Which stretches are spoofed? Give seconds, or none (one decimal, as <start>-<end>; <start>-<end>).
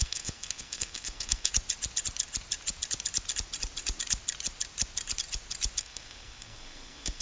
0.0-1.5; 5.8-7.2